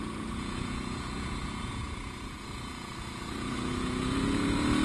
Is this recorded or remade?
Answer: remade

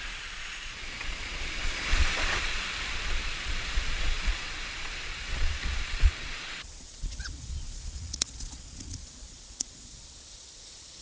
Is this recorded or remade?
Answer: remade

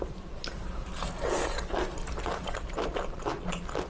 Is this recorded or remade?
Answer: recorded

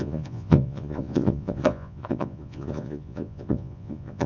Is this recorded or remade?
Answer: remade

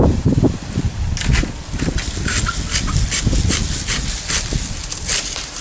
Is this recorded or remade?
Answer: recorded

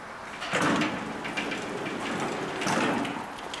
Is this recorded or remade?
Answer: recorded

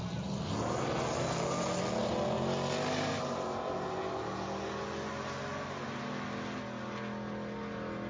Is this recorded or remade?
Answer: recorded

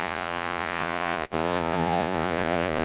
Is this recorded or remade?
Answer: remade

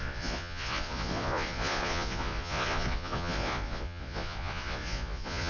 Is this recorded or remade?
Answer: remade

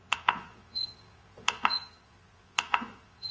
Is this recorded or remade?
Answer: remade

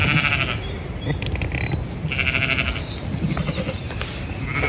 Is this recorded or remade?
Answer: recorded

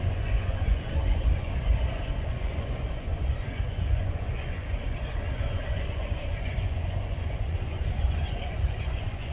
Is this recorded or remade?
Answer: remade